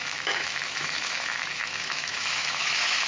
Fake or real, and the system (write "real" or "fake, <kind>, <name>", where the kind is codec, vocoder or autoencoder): fake, autoencoder, DAC-VAE